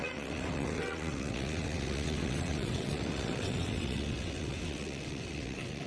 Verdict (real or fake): fake